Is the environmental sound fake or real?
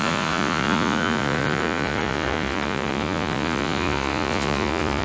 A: fake